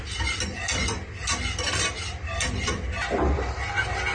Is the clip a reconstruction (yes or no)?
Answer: no